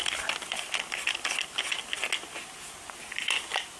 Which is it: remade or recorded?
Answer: recorded